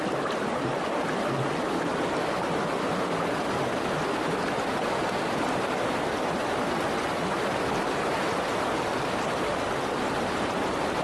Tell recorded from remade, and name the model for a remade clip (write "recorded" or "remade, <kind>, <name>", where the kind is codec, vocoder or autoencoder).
recorded